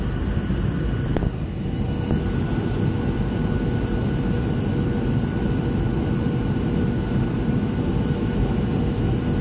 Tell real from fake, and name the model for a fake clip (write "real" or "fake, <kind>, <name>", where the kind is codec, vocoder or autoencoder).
real